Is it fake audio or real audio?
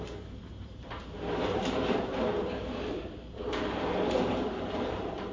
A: fake